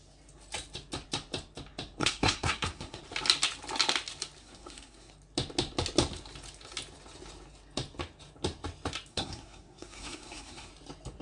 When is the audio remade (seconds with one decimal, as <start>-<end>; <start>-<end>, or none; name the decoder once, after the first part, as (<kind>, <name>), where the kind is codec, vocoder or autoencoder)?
2.0-3.0 (codec, SNAC); 4.4-5.1; 9.1-10.7